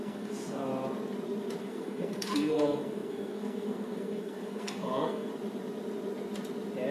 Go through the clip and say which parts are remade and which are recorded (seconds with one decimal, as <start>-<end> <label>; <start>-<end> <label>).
0.0-0.7 remade; 0.7-1.6 recorded; 1.6-5.3 remade; 5.3-6.9 recorded